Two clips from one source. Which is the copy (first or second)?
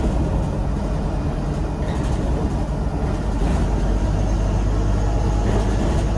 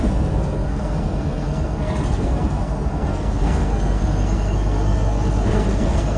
second